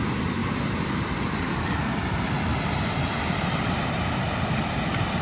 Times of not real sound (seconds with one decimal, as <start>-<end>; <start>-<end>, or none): 0.0-5.2